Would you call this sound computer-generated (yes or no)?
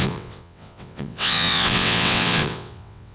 yes